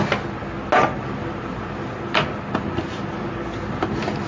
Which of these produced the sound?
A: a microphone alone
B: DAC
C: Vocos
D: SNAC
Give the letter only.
A